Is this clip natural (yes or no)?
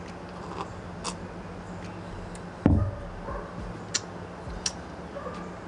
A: yes